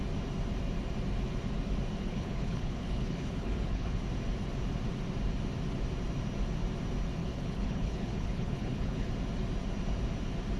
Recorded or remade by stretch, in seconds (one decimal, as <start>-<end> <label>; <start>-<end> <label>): 0.0-2.0 recorded; 2.0-4.0 remade; 4.0-7.2 recorded; 7.2-9.1 remade; 9.1-10.6 recorded